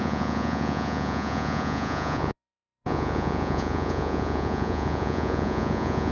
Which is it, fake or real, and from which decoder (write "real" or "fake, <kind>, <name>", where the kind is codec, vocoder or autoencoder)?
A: fake, vocoder, Vocos